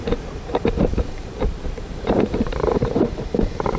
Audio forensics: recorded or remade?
remade